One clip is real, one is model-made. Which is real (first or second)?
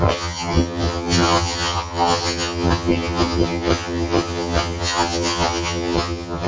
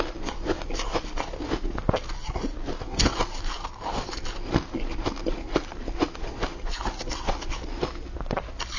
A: second